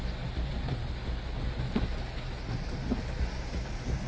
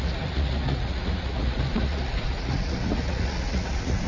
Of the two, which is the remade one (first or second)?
second